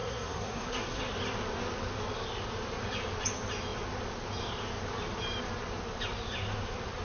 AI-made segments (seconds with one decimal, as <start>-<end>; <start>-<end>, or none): 0.0-1.0